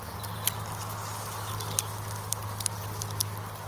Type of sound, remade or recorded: recorded